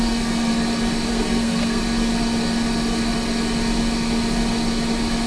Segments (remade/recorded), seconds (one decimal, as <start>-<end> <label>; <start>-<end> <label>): 0.0-0.5 remade; 0.5-1.1 recorded; 1.1-1.8 remade; 1.8-5.3 recorded